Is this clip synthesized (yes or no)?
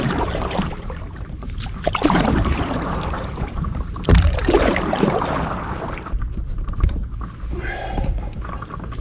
yes